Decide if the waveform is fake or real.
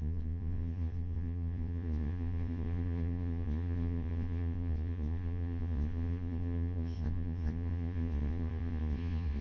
fake